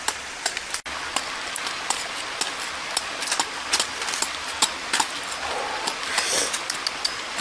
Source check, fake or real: real